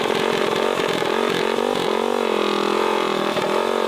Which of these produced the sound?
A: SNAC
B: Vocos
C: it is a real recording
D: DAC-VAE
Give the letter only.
C